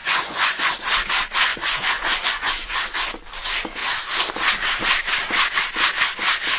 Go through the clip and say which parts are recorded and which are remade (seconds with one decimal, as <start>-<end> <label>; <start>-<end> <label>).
0.0-0.7 remade; 0.7-1.5 recorded; 1.5-2.8 remade; 2.8-6.6 recorded